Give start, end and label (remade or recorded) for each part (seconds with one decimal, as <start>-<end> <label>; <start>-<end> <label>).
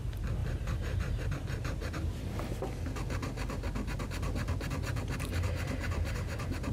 0.0-0.4 recorded; 0.4-2.8 remade; 2.8-4.9 recorded; 4.9-6.7 remade